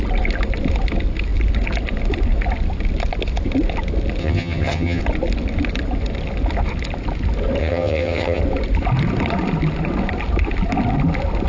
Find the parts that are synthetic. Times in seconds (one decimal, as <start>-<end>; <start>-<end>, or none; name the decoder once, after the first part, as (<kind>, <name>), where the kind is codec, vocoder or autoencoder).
4.2-5.0 (vocoder, HiFi-GAN); 7.6-8.4